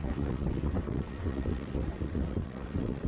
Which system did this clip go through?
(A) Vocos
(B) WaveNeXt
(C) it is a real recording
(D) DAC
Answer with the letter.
B